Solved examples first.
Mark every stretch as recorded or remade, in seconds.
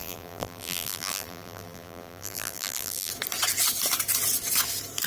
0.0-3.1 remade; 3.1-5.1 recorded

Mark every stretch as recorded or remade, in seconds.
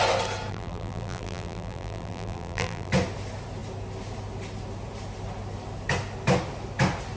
0.0-0.5 recorded; 0.5-2.9 remade; 2.9-7.2 recorded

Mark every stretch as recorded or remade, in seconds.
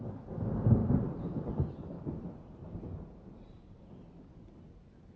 0.0-0.8 recorded; 0.8-3.9 remade; 3.9-5.2 recorded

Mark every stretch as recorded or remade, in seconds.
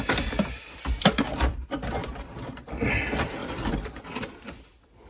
0.0-2.0 recorded; 2.0-2.6 remade; 2.6-3.4 recorded; 3.4-4.0 remade; 4.0-5.1 recorded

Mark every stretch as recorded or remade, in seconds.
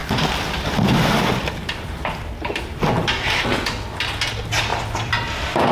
0.0-3.4 remade; 3.4-4.7 recorded; 4.7-5.7 remade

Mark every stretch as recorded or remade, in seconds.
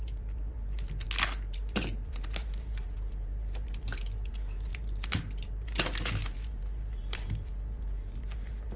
0.0-8.8 remade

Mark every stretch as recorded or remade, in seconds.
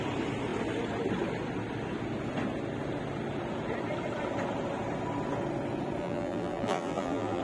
0.0-6.0 recorded; 6.0-7.4 remade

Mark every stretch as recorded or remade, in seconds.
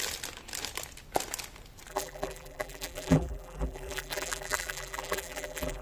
0.0-1.9 recorded; 1.9-5.8 remade